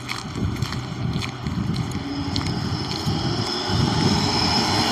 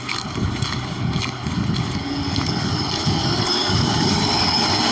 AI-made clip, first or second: second